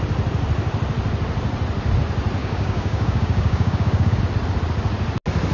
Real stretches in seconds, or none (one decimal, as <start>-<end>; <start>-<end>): 0.0-2.4; 4.2-5.5